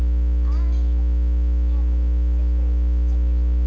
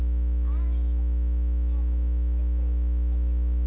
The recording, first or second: second